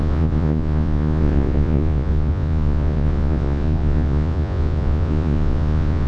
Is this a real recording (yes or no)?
no